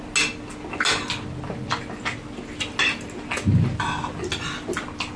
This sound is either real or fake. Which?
real